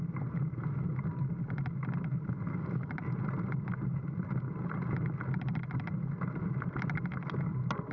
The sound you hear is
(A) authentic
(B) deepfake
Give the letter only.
A